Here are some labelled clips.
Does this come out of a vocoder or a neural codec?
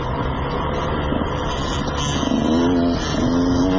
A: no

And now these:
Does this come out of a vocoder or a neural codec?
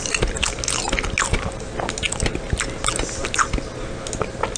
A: no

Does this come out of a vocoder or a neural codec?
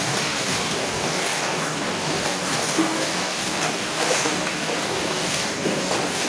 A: yes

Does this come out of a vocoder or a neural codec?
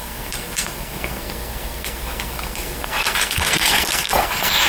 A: yes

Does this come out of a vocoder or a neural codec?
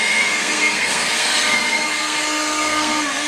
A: yes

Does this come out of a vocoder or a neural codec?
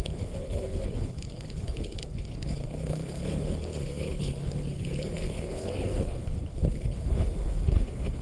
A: yes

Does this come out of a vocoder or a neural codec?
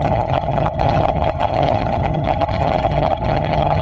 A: yes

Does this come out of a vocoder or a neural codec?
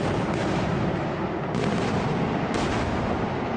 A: no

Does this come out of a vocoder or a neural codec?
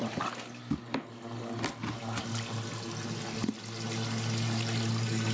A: no